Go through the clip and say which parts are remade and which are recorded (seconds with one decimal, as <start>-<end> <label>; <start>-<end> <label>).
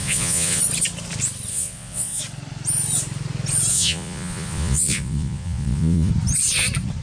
0.0-0.6 remade; 0.6-1.5 recorded; 1.5-2.2 remade; 2.2-3.7 recorded; 3.7-6.1 remade; 6.1-7.0 recorded